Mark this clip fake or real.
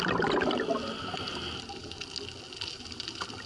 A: real